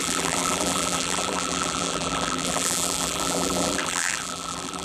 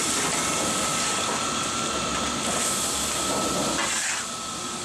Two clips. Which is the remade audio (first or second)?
first